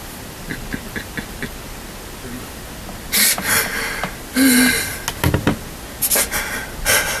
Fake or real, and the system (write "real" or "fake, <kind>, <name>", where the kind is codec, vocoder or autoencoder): real